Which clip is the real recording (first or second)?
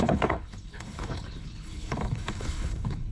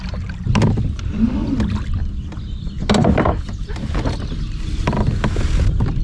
second